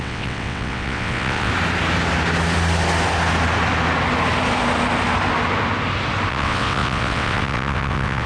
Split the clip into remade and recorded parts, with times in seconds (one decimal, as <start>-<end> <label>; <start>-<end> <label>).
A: 0.0-1.5 remade; 1.5-6.3 recorded; 6.3-8.3 remade